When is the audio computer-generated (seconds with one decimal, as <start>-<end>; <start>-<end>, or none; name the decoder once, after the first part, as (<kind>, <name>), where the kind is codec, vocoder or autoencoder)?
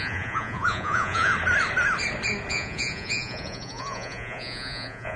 0.0-1.3 (vocoder, Vocos); 2.5-5.2